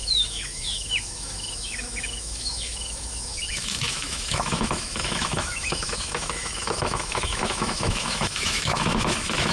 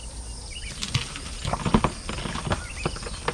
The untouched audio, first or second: second